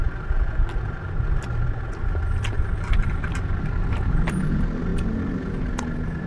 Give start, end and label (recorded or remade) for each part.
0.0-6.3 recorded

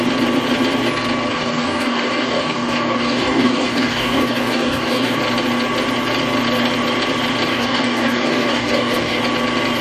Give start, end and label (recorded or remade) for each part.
0.0-1.3 recorded; 1.3-5.2 remade; 5.2-7.5 recorded; 7.5-9.2 remade; 9.2-9.8 recorded

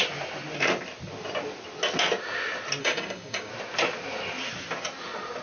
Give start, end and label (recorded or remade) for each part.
0.0-2.8 recorded; 2.8-3.5 remade; 3.5-5.4 recorded